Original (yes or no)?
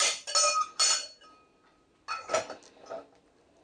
yes